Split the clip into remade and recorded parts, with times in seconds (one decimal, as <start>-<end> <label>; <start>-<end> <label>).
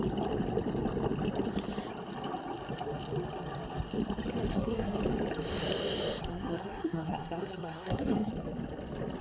0.0-4.5 recorded; 4.5-5.0 remade; 5.0-6.3 recorded; 6.3-8.3 remade; 8.3-9.2 recorded